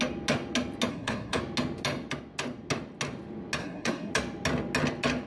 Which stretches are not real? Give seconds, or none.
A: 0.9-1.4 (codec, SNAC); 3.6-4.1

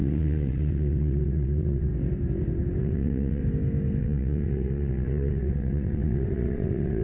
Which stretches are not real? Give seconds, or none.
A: 0.0-1.9 (vocoder, WaveNeXt); 2.8-3.4; 4.0-7.0

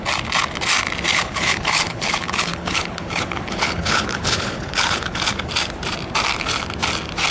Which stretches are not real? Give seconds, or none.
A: 1.1-5.5 (codec, HILCodec)

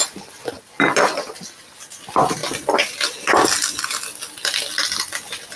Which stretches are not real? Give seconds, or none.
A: none

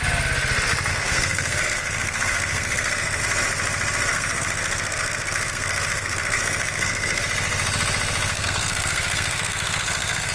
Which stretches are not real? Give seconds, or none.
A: 0.9-3.2 (codec, SNAC); 4.1-7.2; 8.3-10.3

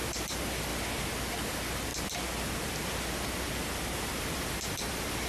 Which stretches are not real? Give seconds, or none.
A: 0.0-0.7 (vocoder, BigVGAN v2); 1.3-1.9; 4.0-5.3